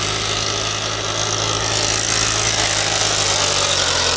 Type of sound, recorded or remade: recorded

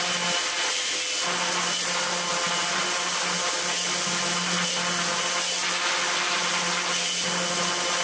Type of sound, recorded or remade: recorded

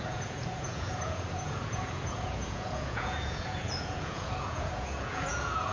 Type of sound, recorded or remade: remade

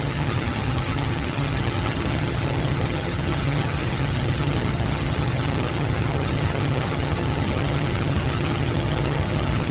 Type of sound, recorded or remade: remade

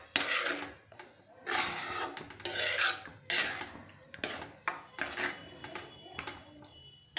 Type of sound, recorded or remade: recorded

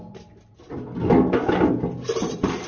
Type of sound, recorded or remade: recorded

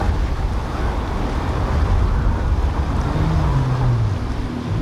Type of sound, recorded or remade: recorded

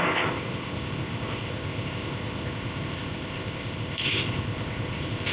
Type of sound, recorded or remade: remade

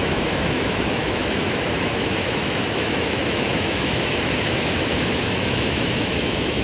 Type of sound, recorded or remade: remade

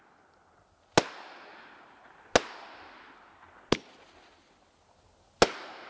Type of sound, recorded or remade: recorded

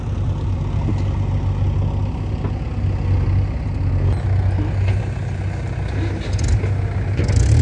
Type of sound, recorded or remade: recorded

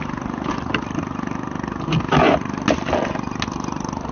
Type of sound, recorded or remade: recorded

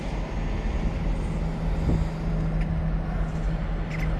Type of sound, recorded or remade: recorded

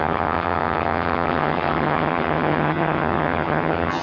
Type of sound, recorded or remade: remade